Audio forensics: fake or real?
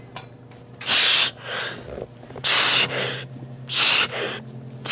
real